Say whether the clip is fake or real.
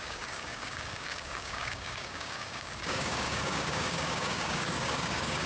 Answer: fake